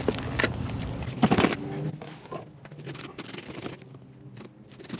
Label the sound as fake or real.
real